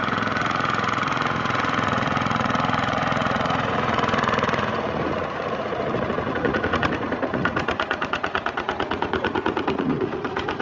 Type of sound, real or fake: fake